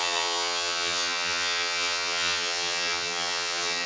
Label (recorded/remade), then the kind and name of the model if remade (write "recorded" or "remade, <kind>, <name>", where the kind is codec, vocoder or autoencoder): remade, vocoder, HiFi-GAN